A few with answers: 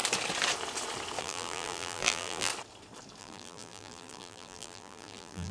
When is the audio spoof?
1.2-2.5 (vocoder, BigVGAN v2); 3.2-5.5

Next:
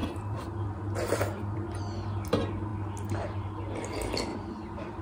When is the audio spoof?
0.0-1.8 (vocoder, BigVGAN v2); 4.3-5.0